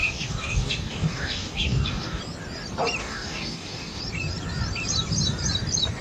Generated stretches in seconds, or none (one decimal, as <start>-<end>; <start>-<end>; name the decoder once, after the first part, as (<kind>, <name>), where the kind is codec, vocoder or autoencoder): 0.0-2.2 (codec, DAC); 3.0-4.0